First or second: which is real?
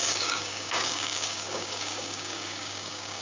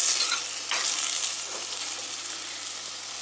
second